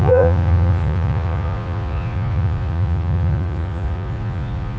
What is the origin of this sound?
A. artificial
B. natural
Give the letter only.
A